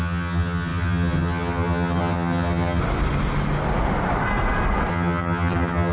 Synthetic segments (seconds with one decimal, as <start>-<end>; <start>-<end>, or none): 0.0-2.8; 4.9-5.9